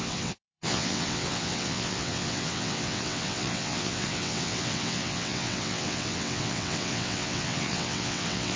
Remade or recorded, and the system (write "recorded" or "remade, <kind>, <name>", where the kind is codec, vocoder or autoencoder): remade, vocoder, WaveNeXt